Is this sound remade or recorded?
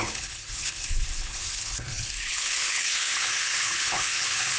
remade